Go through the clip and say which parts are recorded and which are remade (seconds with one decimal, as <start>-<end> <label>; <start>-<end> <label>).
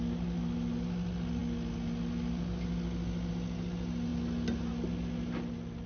0.0-5.9 recorded